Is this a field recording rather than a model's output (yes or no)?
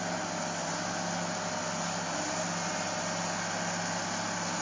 yes